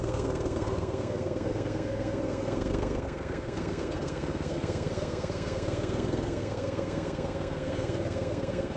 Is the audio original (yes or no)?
no